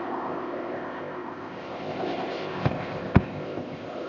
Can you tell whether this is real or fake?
fake